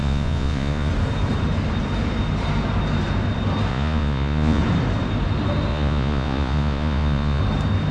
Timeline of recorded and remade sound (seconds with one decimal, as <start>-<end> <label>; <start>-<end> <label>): 0.0-0.9 remade; 0.9-3.7 recorded; 3.7-4.6 remade; 4.6-5.7 recorded; 5.7-7.4 remade; 7.4-7.9 recorded